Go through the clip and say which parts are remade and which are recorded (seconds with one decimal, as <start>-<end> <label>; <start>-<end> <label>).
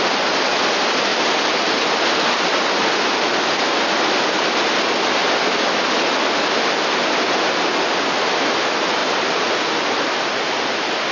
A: 0.0-11.1 recorded